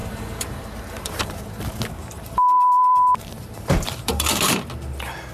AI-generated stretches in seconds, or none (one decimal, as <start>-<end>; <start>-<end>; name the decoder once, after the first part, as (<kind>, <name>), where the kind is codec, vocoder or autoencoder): 0.0-1.5 (vocoder, BigVGAN v2); 2.0-4.6